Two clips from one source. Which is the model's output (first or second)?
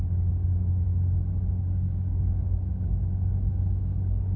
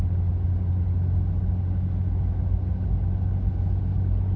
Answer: first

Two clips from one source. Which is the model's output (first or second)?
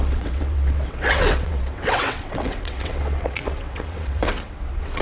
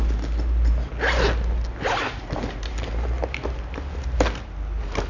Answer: first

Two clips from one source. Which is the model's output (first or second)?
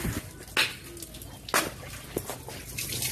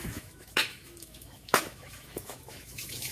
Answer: second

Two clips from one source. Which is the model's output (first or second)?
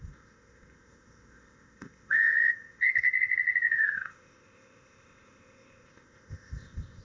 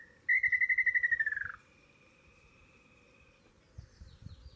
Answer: first